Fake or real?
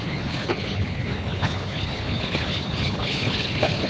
fake